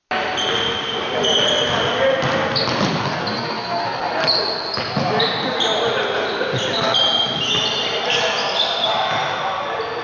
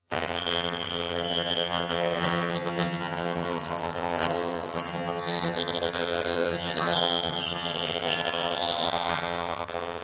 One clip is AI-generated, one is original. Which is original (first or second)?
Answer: first